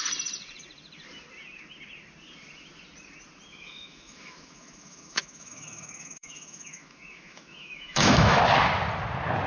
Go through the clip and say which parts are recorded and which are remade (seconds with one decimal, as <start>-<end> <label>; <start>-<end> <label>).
0.0-3.5 recorded; 3.5-8.4 remade; 8.4-9.5 recorded